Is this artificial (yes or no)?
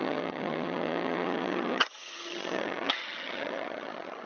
yes